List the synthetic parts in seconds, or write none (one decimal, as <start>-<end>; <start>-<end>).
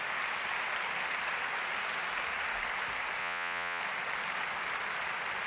3.2-3.8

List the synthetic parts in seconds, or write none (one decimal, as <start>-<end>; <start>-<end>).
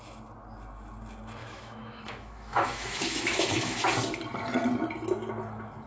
1.4-3.8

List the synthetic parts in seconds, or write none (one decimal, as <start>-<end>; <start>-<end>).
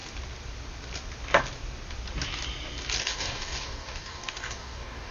3.0-5.1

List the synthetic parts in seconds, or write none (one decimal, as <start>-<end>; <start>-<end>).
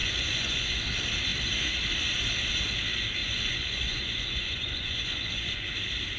0.0-0.8; 3.2-5.7